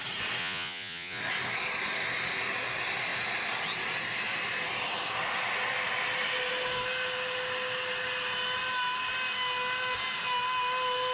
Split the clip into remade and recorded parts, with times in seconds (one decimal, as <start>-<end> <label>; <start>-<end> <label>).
0.0-0.4 recorded; 0.4-1.2 remade; 1.2-11.1 recorded